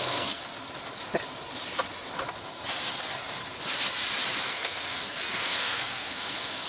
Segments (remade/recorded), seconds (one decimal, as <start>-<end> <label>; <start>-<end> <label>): 0.0-0.4 remade; 0.4-4.4 recorded; 4.4-6.7 remade